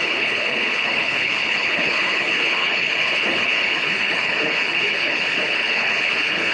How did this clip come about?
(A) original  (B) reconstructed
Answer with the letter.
B